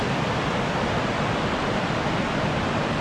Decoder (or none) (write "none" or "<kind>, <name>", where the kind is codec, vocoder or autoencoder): none